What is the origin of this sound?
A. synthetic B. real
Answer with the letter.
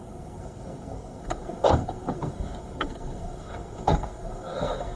A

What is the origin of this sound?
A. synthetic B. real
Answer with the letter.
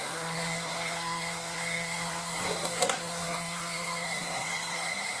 A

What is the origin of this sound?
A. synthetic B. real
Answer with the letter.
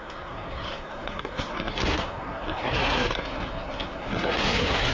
A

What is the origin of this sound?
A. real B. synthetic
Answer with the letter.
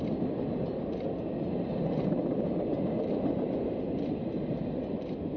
A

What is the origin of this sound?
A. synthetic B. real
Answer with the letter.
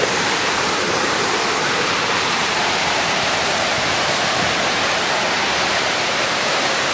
A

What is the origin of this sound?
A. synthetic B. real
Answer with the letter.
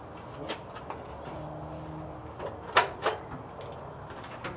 B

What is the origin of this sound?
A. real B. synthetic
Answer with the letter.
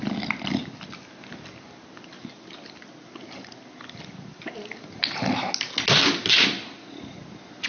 A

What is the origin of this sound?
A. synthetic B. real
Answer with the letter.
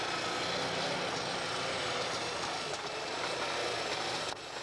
B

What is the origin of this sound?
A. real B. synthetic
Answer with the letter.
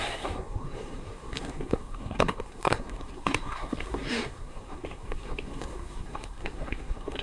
B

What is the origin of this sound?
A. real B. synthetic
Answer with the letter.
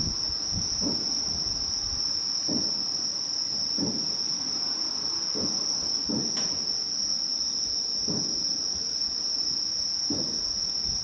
A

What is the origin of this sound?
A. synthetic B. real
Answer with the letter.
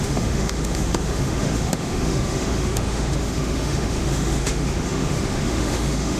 A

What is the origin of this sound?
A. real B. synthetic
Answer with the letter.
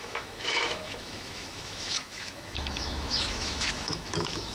B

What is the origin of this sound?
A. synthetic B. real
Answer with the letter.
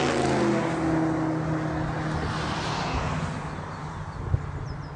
B